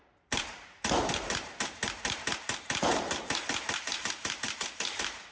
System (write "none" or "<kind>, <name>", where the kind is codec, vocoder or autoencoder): vocoder, BigVGAN v2